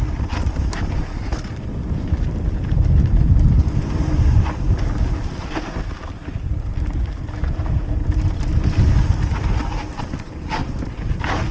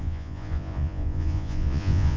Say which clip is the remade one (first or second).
second